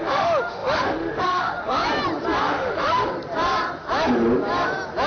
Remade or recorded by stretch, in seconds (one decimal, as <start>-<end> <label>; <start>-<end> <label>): 0.0-1.8 remade; 1.8-2.4 recorded; 2.4-3.1 remade; 3.1-5.1 recorded